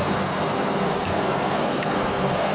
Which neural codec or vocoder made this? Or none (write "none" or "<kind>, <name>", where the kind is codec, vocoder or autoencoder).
codec, SNAC